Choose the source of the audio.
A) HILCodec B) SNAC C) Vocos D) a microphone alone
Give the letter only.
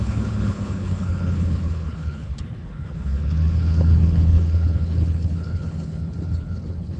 A